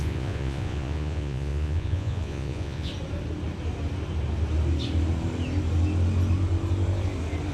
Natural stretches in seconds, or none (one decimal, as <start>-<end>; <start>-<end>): 2.9-7.5